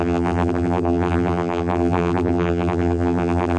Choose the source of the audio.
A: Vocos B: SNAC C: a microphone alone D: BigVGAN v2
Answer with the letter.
D